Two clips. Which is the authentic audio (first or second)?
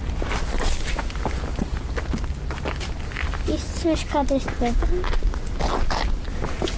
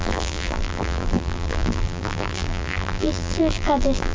first